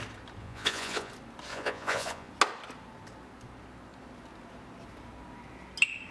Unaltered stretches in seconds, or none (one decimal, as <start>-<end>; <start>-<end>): 0.0-0.4; 1.1-1.5; 2.3-6.1